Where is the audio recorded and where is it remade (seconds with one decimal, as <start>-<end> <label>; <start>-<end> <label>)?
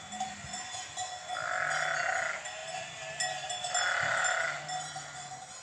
0.0-5.6 recorded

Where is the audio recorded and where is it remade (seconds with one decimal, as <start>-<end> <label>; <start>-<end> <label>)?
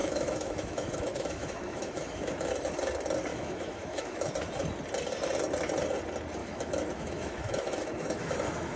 0.0-2.5 remade; 2.5-3.3 recorded; 3.3-4.3 remade; 4.3-6.4 recorded; 6.4-8.8 remade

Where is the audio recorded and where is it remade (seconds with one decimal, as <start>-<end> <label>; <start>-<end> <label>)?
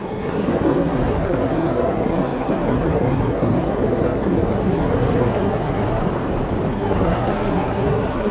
0.0-6.0 remade; 6.0-6.7 recorded; 6.7-8.3 remade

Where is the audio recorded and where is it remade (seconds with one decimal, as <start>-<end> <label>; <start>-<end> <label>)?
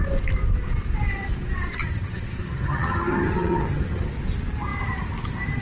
0.0-1.8 recorded; 1.8-4.1 remade; 4.1-5.6 recorded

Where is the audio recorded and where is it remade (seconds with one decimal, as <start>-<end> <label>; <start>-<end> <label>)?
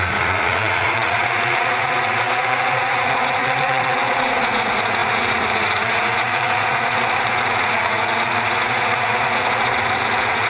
0.0-10.5 remade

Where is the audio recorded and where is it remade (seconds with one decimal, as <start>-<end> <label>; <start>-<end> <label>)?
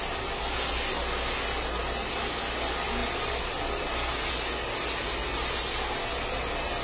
0.0-6.8 recorded